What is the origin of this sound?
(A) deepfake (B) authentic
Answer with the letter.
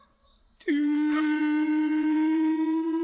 A